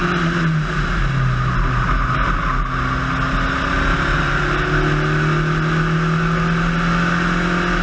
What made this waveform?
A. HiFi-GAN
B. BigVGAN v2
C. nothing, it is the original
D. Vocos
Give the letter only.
C